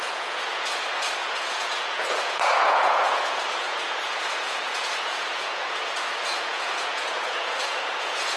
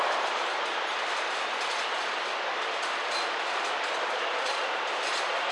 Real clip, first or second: second